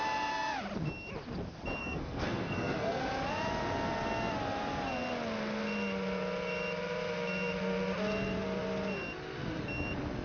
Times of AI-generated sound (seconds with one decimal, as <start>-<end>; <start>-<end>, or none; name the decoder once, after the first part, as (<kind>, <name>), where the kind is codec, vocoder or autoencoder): 1.8-3.0 (codec, SNAC)